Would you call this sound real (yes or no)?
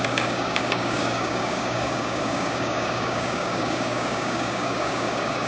no